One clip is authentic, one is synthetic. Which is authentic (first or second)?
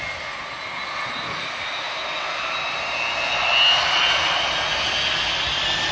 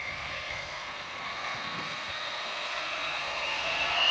first